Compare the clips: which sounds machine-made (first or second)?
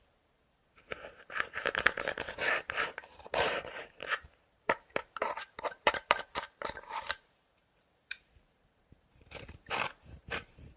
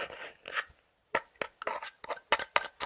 first